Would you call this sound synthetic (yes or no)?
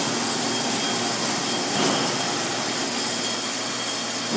no